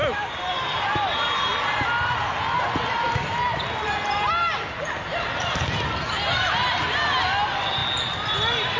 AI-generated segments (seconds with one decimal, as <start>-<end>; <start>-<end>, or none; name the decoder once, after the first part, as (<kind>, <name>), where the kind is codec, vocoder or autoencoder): none